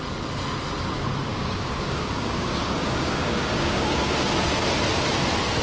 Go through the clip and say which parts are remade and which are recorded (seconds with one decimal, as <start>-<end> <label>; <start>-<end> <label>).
0.0-1.3 recorded; 1.3-4.3 remade; 4.3-5.6 recorded